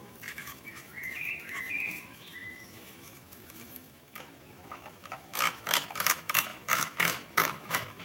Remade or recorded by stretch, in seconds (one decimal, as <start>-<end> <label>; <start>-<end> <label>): 0.0-8.0 remade